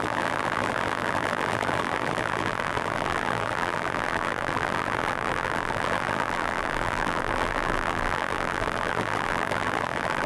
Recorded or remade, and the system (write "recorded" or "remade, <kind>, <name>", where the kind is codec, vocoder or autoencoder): remade, vocoder, BigVGAN v2